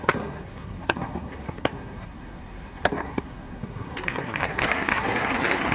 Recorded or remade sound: remade